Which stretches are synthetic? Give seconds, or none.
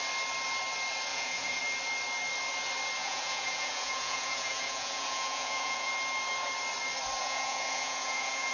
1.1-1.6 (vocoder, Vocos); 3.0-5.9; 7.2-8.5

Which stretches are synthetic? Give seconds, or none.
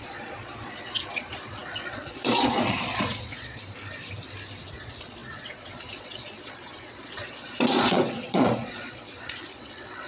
0.0-3.6 (vocoder, Vocos); 4.7-10.1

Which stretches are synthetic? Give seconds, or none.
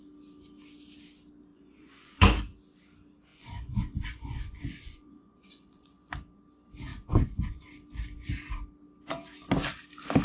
1.5-2.4 (vocoder, Vocos); 3.3-6.1; 6.9-7.6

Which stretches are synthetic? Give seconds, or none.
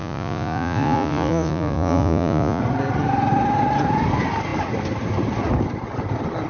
0.0-2.6 (vocoder, Vocos)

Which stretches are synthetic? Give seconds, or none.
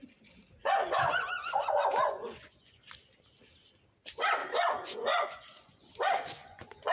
0.6-2.9 (vocoder, Vocos); 4.4-5.9; 6.4-6.9